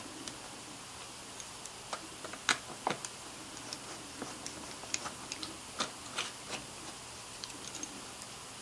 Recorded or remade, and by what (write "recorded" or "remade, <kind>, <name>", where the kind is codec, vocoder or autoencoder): recorded